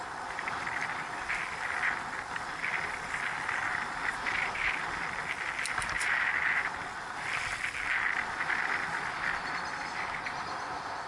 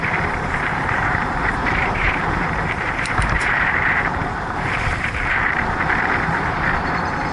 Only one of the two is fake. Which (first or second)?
second